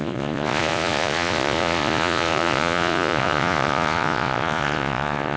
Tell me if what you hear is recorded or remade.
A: remade